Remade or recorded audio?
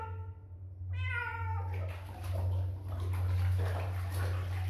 recorded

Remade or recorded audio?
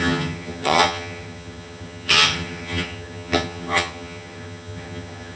remade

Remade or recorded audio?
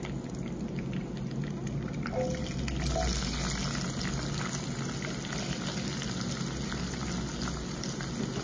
recorded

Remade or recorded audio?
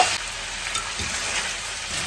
recorded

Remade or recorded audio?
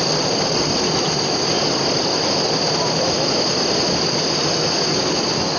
recorded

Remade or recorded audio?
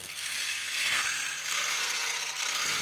remade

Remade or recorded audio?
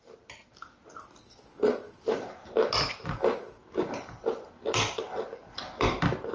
recorded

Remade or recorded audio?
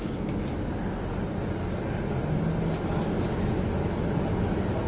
recorded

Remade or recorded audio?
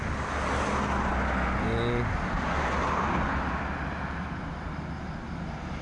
recorded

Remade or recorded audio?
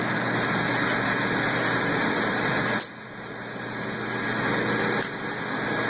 recorded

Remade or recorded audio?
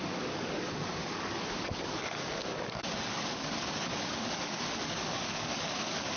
remade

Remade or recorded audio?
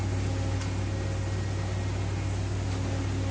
recorded